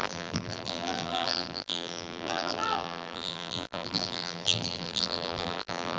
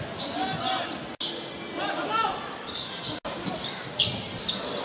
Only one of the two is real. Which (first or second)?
second